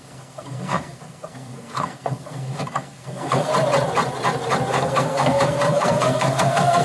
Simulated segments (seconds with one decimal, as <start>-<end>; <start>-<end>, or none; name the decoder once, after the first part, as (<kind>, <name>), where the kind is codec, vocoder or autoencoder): 0.0-3.5 (codec, SNAC); 4.7-6.8